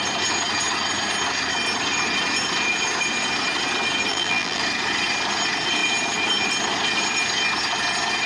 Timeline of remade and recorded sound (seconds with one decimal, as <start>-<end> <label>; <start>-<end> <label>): 0.0-4.1 recorded; 4.1-4.6 remade; 4.6-8.3 recorded